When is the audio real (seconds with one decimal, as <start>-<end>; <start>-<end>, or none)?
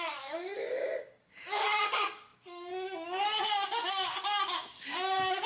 none